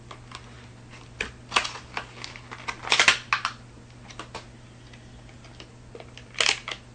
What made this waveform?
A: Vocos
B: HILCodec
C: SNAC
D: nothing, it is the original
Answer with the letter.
D